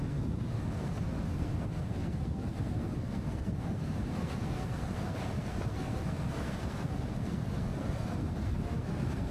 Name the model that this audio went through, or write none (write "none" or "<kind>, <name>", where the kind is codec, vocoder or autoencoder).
codec, SNAC